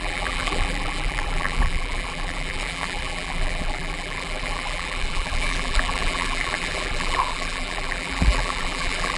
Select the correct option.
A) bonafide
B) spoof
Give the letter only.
B